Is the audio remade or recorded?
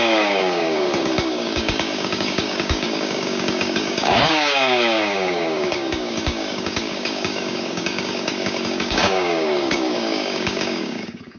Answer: remade